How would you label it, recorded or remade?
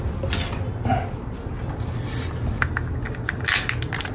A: recorded